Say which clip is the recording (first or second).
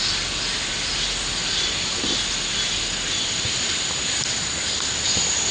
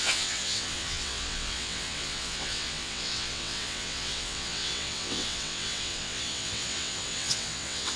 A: first